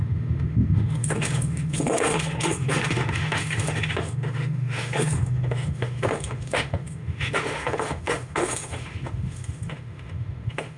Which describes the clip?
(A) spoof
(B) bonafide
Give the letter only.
A